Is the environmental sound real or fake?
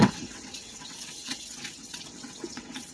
fake